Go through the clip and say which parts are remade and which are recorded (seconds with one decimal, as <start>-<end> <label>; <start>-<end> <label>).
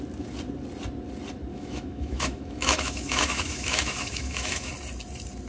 0.0-1.5 recorded; 1.5-4.7 remade; 4.7-5.5 recorded